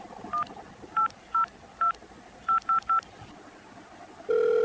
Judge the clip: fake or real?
real